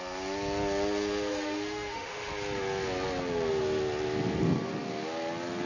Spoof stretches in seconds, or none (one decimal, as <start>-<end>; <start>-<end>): 1.3-2.3